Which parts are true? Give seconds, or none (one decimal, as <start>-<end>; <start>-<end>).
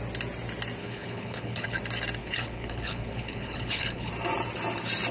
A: 0.0-0.8; 1.8-2.2; 4.1-5.1